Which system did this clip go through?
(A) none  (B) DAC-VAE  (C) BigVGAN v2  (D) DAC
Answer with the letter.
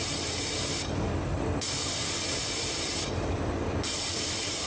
C